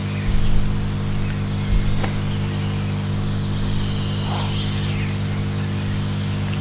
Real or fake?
real